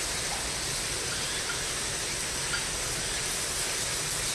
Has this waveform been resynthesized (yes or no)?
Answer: no